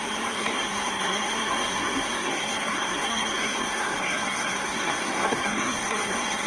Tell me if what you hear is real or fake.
fake